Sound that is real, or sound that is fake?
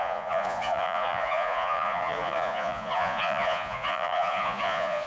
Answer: fake